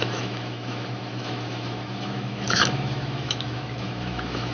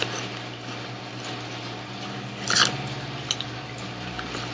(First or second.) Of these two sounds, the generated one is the first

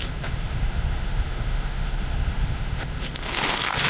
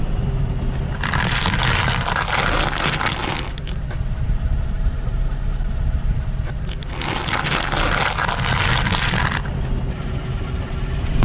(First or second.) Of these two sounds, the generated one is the first